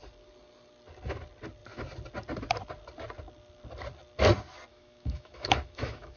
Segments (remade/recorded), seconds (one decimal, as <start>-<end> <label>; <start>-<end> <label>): 0.0-4.7 recorded; 4.7-6.2 remade